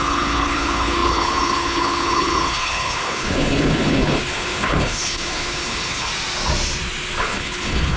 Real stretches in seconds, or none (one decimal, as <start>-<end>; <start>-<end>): 6.1-7.2